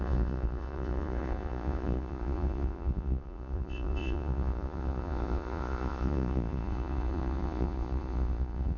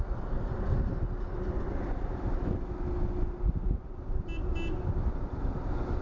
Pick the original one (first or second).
second